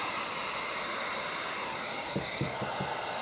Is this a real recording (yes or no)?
yes